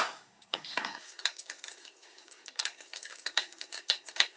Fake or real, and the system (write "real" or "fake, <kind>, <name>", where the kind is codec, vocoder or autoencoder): fake, codec, SNAC